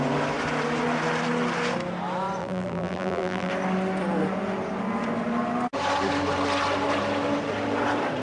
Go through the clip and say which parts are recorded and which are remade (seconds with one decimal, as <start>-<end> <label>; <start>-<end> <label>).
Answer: 0.0-2.4 recorded; 2.4-3.5 remade; 3.5-8.2 recorded